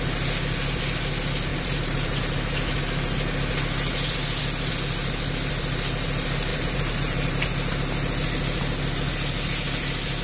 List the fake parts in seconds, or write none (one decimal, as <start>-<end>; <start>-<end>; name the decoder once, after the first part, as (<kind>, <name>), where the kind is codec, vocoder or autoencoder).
1.5-2.2 (vocoder, BigVGAN v2); 6.5-7.3

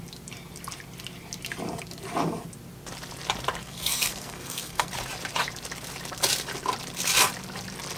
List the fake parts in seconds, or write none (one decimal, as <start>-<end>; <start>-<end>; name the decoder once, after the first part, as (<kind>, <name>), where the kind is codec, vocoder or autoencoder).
3.6-4.9 (codec, SNAC)